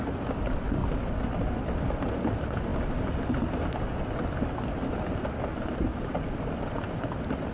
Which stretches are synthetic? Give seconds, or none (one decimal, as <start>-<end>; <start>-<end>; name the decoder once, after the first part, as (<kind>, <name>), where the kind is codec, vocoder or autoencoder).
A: 0.8-1.7 (vocoder, BigVGAN v2); 5.9-7.5